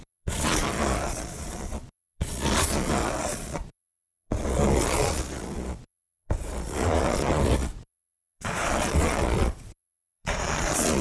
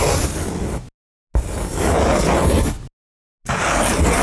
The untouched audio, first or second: second